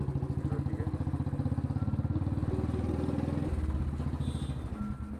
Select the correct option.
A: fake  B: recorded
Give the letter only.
B